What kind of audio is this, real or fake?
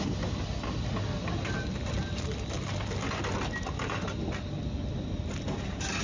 real